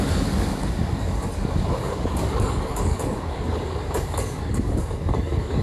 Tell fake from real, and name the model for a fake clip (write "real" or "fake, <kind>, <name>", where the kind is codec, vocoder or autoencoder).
fake, codec, DAC